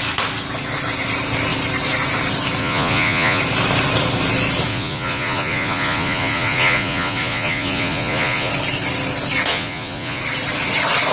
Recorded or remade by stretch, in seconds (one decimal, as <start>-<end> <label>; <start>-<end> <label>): 0.0-2.6 recorded; 2.6-3.4 remade; 3.4-4.7 recorded; 4.7-8.5 remade; 8.5-9.5 recorded; 9.5-10.2 remade; 10.2-11.1 recorded